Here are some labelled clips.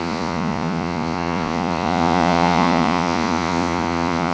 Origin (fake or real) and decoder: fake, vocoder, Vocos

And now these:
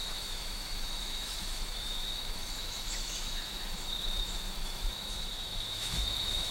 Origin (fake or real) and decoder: fake, autoencoder, DAC-VAE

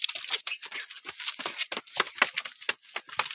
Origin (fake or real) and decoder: real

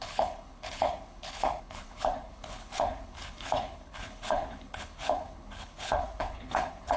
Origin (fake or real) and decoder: fake, codec, HILCodec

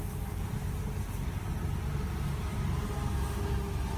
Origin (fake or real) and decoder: real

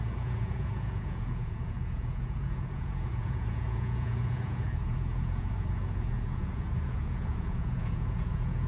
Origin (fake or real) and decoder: fake, vocoder, Vocos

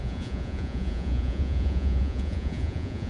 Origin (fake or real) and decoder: fake, vocoder, Vocos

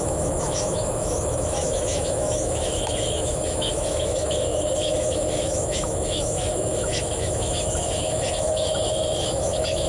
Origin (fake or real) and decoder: fake, autoencoder, DAC-VAE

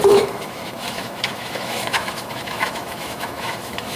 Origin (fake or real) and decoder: fake, autoencoder, DAC-VAE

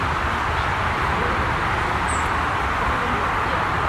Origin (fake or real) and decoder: real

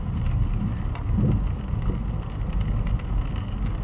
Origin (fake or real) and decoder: real